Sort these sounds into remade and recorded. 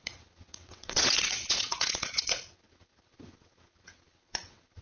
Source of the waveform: remade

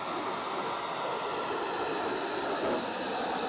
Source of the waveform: recorded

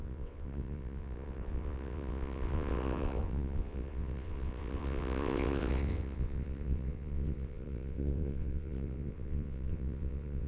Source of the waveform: remade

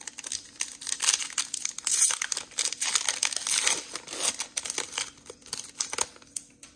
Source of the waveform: recorded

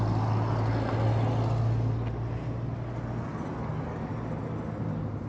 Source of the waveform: recorded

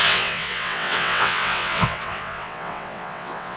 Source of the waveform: remade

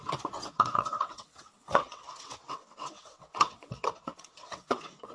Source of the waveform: remade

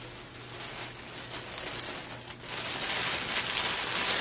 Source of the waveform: recorded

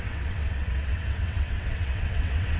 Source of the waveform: remade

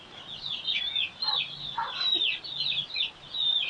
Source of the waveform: recorded